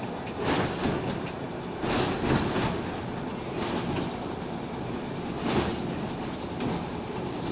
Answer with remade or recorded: recorded